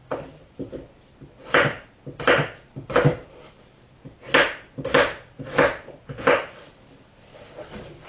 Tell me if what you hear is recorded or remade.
recorded